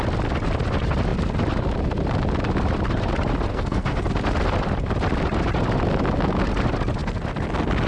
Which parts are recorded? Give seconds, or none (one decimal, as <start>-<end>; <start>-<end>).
0.0-3.5; 4.0-7.9